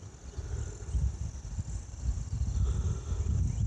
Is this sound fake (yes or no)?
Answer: no